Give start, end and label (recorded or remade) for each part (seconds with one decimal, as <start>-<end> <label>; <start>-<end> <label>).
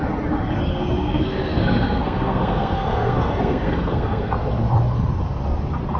0.0-0.7 recorded; 0.7-4.3 remade; 4.3-6.0 recorded